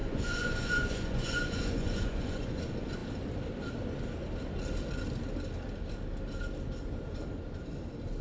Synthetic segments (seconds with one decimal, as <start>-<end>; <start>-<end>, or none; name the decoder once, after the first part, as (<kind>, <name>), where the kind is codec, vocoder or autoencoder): 0.0-2.6 (vocoder, Vocos)

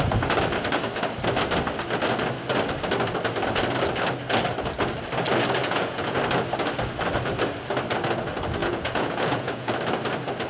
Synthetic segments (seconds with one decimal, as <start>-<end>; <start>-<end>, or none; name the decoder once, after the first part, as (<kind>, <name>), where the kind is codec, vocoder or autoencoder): 5.6-6.2 (vocoder, Vocos); 8.6-9.7

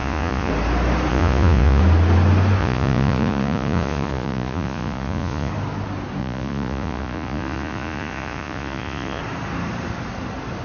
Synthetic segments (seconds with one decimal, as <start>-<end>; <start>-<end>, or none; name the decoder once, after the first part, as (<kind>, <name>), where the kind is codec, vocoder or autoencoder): 0.0-0.5 (vocoder, Vocos); 1.1-1.8; 2.6-5.5; 6.2-9.2

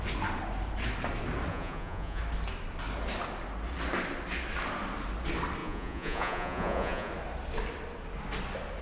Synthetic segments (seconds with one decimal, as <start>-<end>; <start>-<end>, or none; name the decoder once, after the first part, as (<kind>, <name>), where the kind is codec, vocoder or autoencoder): 1.5-2.2 (vocoder, Vocos); 5.6-7.1

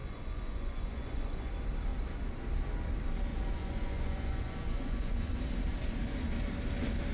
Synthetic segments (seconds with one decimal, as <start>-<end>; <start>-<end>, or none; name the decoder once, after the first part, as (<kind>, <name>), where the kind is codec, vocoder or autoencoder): 0.0-1.5 (vocoder, Vocos); 3.3-5.4

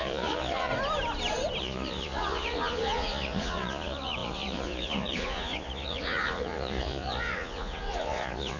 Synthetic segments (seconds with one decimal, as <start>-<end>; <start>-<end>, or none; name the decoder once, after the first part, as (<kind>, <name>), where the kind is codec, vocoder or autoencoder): 0.0-0.7 (vocoder, Vocos); 1.6-8.6

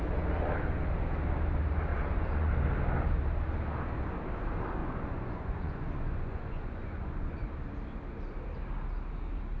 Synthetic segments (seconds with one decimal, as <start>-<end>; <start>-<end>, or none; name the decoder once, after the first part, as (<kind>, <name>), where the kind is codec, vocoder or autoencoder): 1.9-2.5 (vocoder, Vocos); 4.8-7.5